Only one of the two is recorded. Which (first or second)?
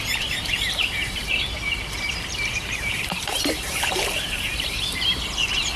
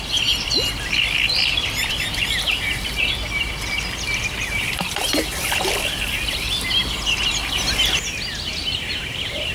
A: second